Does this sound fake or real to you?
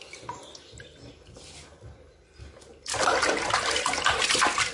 real